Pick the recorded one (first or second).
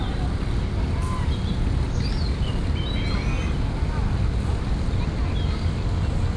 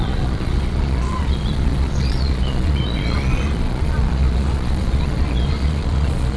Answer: first